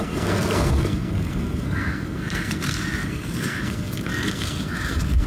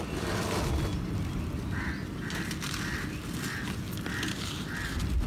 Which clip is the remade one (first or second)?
first